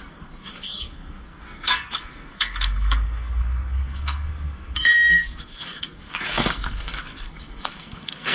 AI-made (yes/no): yes